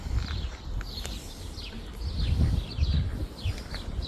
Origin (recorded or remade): recorded